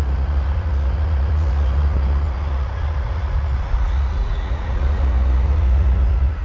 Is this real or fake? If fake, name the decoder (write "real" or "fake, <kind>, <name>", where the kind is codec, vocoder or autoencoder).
fake, vocoder, Vocos